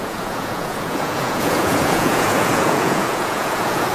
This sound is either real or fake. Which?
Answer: fake